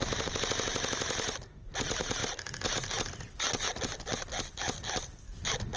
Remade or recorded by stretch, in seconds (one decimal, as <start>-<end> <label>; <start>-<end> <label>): 0.0-5.8 recorded